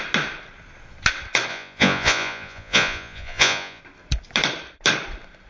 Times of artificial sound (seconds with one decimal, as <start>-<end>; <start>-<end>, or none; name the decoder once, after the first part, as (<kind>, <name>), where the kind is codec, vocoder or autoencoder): 1.5-3.8 (vocoder, Vocos)